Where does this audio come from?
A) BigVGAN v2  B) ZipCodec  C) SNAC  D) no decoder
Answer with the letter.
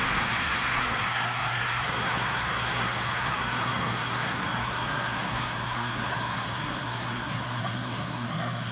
C